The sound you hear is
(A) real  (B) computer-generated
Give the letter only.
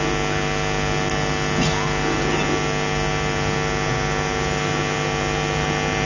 A